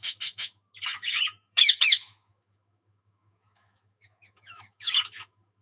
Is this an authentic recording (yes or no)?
no